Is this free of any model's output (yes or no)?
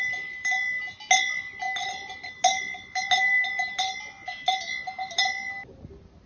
yes